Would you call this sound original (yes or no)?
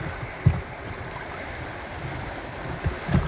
yes